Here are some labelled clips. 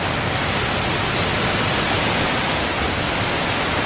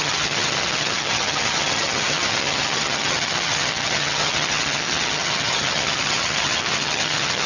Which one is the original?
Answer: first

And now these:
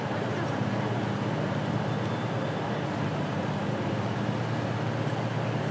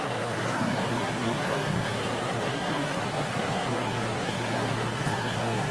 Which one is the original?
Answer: first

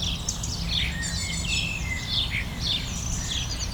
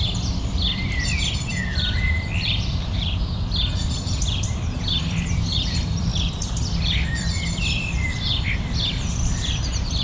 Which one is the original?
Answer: first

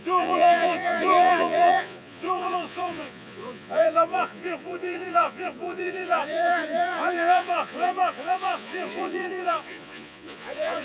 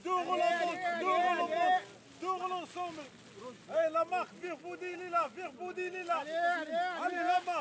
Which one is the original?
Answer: second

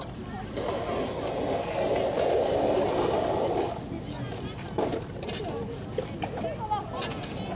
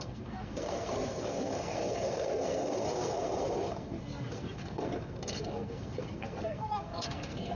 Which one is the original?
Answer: first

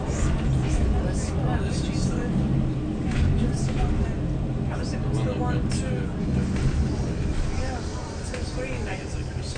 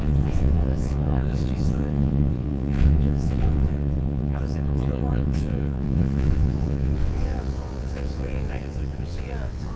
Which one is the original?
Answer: first